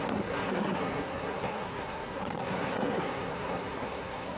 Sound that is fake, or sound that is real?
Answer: fake